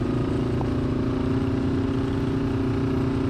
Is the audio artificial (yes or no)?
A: no